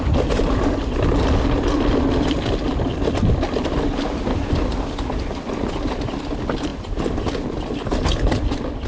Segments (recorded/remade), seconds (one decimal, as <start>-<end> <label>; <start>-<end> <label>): 0.0-8.9 recorded